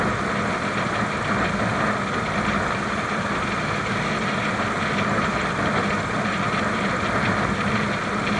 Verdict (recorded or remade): recorded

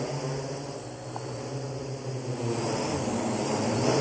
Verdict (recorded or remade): recorded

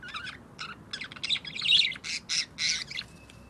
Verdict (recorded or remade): recorded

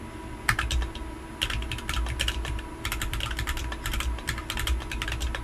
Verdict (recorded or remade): recorded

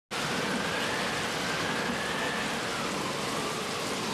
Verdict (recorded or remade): recorded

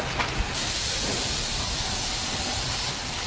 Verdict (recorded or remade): recorded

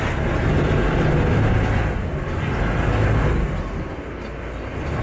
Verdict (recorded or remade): recorded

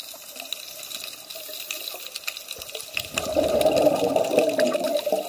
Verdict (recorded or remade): recorded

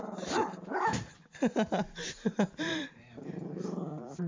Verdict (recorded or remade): remade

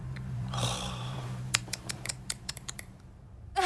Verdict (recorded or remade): remade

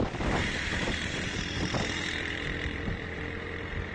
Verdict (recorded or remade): remade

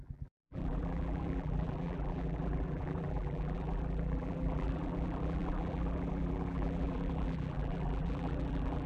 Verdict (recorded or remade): remade